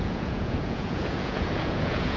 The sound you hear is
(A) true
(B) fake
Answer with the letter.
B